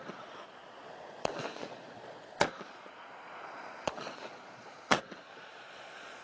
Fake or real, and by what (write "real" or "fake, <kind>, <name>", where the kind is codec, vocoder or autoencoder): fake, vocoder, Vocos